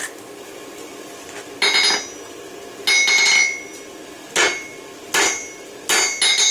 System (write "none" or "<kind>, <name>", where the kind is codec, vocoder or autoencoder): none